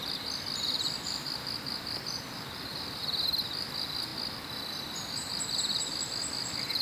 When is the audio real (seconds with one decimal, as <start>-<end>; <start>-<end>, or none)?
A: 2.7-3.4; 4.1-4.9